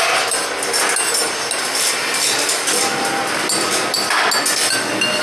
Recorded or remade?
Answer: recorded